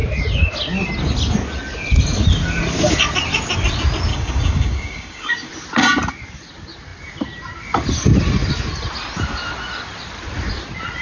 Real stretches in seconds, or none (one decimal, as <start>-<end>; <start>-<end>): 0.0-4.1; 5.5-11.0